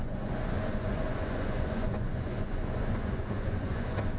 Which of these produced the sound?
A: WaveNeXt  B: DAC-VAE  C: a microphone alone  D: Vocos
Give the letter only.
D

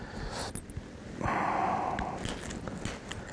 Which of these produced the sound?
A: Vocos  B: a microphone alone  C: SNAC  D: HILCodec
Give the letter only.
B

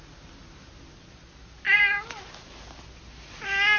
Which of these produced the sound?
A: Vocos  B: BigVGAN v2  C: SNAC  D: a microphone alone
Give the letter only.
D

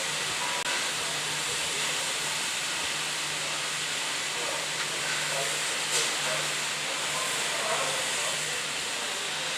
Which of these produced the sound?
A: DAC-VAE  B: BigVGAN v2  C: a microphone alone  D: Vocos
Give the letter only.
C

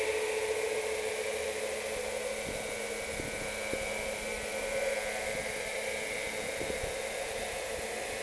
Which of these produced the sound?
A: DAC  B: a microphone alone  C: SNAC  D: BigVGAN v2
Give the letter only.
B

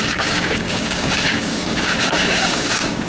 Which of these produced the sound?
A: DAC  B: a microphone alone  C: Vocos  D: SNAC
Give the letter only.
A